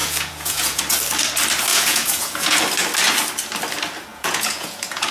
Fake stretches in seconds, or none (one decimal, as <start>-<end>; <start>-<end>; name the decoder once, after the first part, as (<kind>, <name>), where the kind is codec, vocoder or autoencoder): 0.0-0.8 (vocoder, Vocos); 1.7-2.6; 4.1-5.1